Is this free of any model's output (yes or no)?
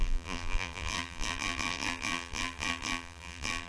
no